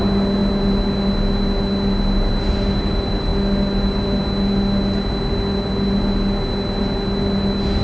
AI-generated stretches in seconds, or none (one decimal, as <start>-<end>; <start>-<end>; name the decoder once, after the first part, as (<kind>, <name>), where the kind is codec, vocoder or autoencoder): none